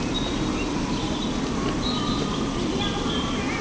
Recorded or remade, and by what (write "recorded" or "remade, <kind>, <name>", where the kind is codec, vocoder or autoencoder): recorded